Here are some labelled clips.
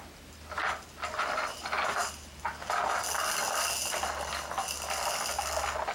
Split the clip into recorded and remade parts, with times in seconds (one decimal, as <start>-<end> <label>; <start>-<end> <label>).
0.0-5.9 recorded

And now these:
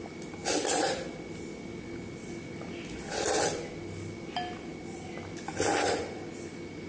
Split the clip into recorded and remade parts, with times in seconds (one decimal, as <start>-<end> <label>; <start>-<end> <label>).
0.0-6.9 recorded

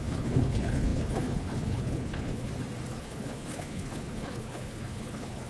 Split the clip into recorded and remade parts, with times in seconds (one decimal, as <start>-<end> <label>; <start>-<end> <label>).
0.0-2.5 remade; 2.5-3.0 recorded; 3.0-5.5 remade